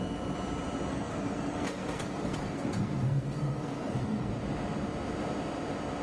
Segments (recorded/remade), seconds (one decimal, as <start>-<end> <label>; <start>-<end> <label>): 0.0-0.9 recorded; 0.9-4.3 remade; 4.3-6.0 recorded